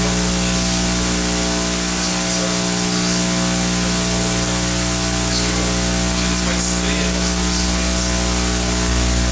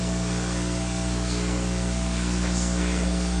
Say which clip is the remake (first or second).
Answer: second